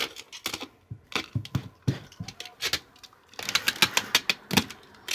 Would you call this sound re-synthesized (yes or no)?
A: no